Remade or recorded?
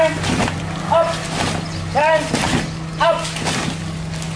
recorded